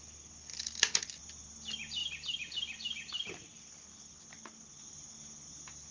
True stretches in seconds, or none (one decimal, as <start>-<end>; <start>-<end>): 0.0-5.9

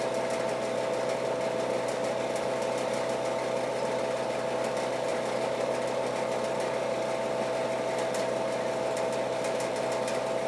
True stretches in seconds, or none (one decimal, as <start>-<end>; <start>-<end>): 0.0-5.1; 5.7-10.5

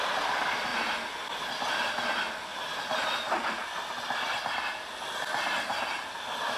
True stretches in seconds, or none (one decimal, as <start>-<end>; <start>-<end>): 0.0-6.6

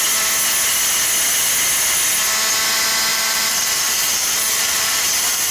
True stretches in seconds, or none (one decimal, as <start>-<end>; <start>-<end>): 0.0-3.1